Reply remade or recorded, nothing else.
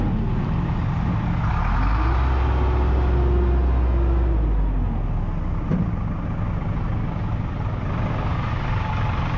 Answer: recorded